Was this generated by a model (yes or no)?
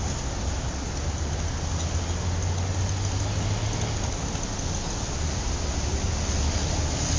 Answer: no